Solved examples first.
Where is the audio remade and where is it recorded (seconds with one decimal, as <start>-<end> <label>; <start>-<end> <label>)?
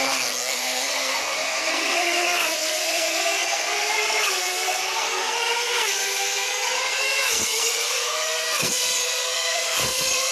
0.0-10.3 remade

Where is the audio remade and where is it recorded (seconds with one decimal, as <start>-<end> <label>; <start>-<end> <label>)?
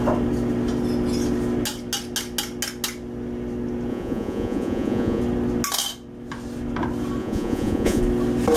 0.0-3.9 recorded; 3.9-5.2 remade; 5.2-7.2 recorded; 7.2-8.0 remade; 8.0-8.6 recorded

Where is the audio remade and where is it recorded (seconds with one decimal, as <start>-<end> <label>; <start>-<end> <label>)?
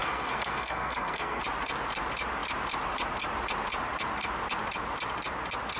0.0-1.4 remade; 1.4-5.8 recorded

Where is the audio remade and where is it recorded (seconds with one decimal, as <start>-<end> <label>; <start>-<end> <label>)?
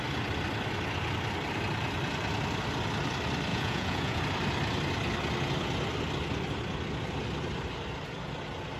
0.0-3.5 recorded; 3.5-4.2 remade; 4.2-8.8 recorded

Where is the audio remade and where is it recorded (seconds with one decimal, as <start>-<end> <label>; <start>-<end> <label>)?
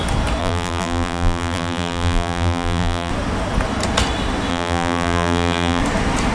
0.0-0.4 recorded; 0.4-3.1 remade; 3.1-4.5 recorded; 4.5-5.8 remade; 5.8-6.3 recorded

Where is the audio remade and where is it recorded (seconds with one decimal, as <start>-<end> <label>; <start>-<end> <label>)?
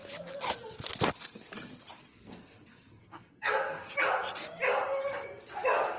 0.0-2.1 recorded; 2.1-3.9 remade; 3.9-6.0 recorded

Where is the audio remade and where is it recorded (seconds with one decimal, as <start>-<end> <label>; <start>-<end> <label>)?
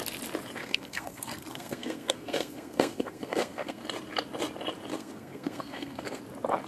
0.0-0.6 recorded; 0.6-3.8 remade; 3.8-4.9 recorded; 4.9-6.2 remade; 6.2-6.7 recorded